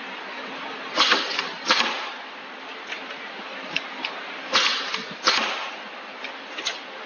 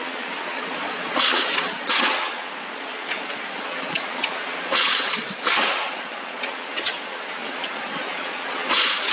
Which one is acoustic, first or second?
first